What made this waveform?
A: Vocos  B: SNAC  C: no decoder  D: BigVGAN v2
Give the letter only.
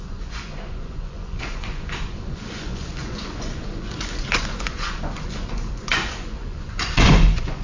A